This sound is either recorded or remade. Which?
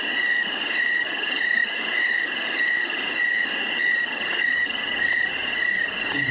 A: remade